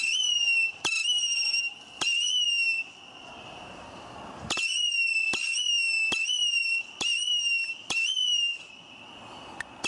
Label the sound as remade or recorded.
recorded